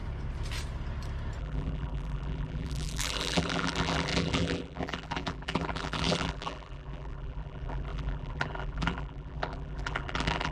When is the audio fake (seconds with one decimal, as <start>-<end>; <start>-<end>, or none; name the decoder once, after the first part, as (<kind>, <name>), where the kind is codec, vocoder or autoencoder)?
1.4-10.5 (vocoder, BigVGAN v2)